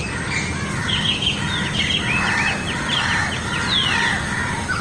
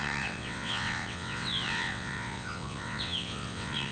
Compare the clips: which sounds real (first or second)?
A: first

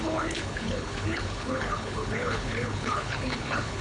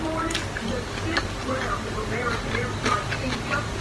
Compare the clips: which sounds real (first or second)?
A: second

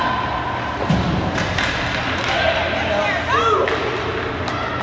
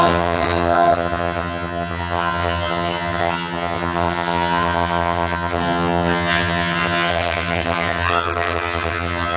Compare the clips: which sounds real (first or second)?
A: first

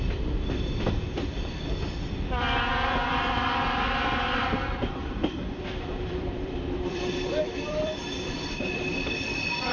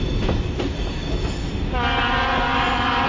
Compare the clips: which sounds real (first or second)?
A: second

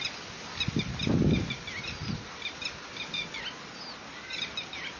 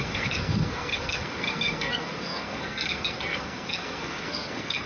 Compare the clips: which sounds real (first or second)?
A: first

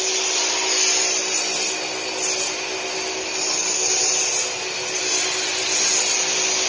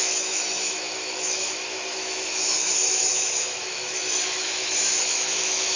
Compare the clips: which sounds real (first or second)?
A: first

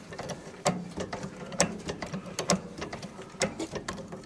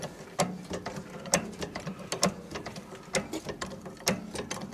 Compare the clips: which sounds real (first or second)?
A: second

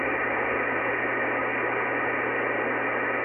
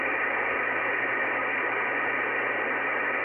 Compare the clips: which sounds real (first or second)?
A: first